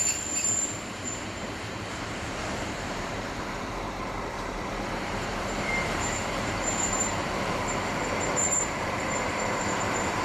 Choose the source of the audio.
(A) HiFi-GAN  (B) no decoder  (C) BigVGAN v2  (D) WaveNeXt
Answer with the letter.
C